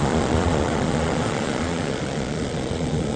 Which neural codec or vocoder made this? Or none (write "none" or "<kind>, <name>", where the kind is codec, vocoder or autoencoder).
vocoder, Vocos